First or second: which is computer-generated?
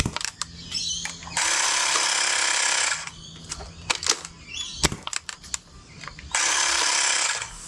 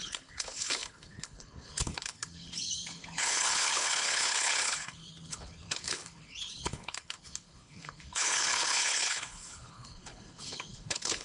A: second